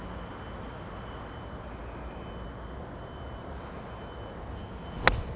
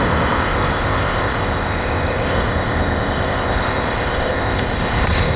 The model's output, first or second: second